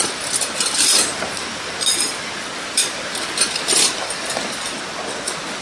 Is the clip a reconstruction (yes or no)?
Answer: no